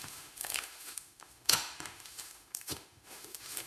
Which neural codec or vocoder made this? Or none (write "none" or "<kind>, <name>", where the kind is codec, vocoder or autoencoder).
autoencoder, DAC-VAE